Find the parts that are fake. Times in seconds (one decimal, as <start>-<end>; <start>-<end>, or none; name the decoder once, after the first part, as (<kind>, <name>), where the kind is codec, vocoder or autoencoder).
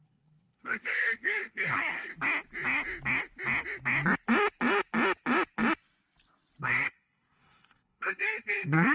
0.0-2.1 (codec, SNAC); 6.6-8.9